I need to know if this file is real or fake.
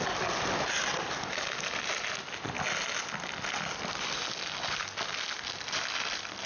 real